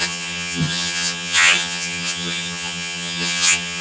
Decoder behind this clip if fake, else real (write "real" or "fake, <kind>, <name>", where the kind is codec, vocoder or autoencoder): fake, vocoder, HiFi-GAN